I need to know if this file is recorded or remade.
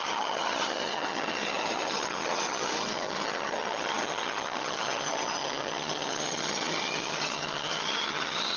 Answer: remade